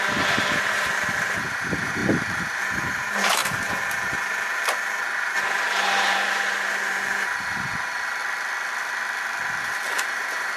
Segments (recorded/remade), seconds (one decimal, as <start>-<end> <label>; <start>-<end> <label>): 0.0-8.2 remade; 8.2-9.6 recorded; 9.6-10.6 remade